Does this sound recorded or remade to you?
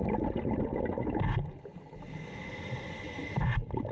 recorded